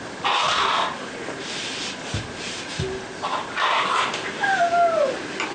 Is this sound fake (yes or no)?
no